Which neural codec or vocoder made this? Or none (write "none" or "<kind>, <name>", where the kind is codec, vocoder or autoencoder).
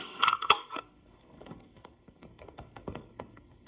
codec, SNAC